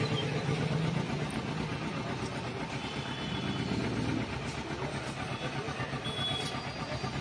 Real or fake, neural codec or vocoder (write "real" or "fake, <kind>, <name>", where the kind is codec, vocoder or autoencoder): real